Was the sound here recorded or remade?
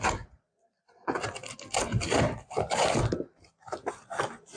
recorded